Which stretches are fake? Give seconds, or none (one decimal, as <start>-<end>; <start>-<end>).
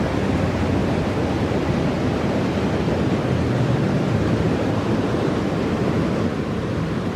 0.8-2.4; 4.8-5.4